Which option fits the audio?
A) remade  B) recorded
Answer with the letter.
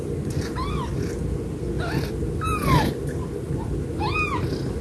B